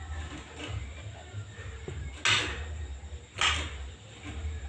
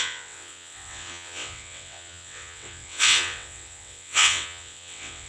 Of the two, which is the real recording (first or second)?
first